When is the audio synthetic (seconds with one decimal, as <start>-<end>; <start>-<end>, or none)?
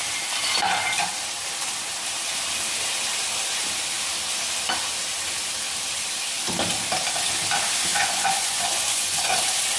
7.9-9.3